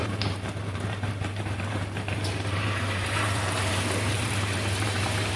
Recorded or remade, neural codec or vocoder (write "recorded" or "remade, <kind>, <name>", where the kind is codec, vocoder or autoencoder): remade, vocoder, BigVGAN v2